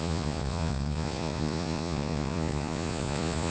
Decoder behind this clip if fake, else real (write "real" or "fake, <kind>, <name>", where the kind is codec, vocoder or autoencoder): fake, vocoder, Vocos